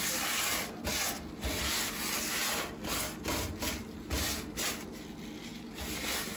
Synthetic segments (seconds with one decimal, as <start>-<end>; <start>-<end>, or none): none